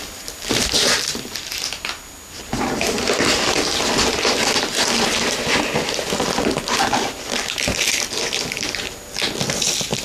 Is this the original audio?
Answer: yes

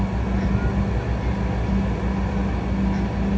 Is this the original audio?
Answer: yes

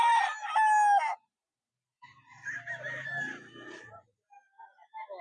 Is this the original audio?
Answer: yes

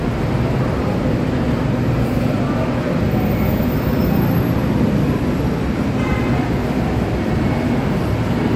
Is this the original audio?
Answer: no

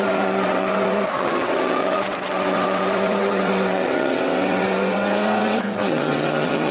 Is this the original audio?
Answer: no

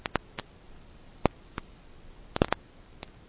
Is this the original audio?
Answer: yes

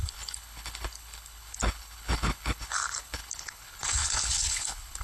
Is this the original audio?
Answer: no